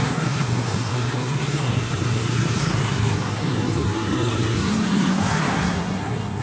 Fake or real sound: fake